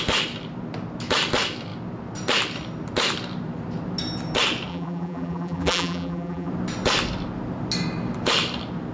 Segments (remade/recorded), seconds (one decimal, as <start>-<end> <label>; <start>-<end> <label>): 0.0-4.7 recorded; 4.7-6.5 remade; 6.5-8.9 recorded